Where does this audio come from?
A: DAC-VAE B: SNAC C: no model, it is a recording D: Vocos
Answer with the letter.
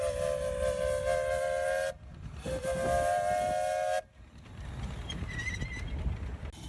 C